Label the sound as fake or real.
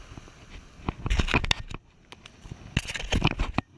real